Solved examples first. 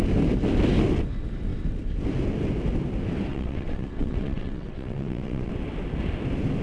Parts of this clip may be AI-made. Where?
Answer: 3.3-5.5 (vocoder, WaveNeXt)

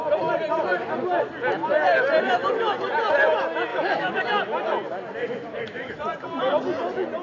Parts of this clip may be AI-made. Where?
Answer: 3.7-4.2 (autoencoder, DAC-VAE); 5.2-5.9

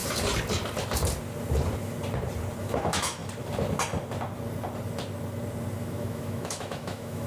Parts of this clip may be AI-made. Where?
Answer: 2.6-3.2 (autoencoder, DAC-VAE); 5.8-7.3

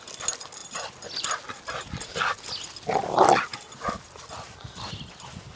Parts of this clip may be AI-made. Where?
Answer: none

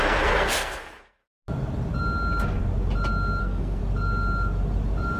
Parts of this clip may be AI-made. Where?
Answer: 0.0-1.2 (codec, SNAC); 3.4-3.8

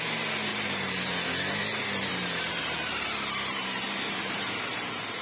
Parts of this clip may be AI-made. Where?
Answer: 0.5-1.1 (vocoder, BigVGAN v2); 1.6-4.7

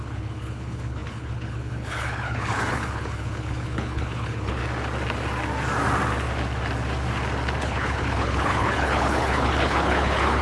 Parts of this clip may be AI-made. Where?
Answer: 0.0-4.6 (codec, HILCodec); 7.6-10.4